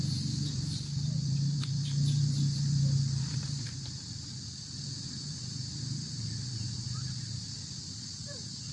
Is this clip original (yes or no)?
yes